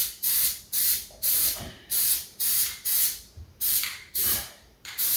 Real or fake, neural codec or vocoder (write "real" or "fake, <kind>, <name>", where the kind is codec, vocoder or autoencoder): fake, vocoder, BigVGAN v2